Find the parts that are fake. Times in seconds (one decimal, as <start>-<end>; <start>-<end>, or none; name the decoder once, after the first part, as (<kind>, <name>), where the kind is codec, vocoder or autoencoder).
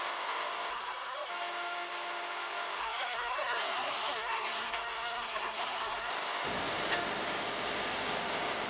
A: 0.7-1.3 (codec, SNAC); 2.8-6.1